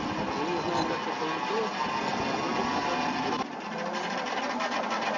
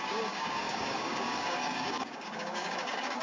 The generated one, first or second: second